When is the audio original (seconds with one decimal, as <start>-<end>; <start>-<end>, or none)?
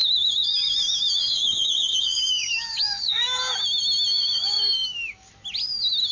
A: 3.5-4.1; 5.3-6.1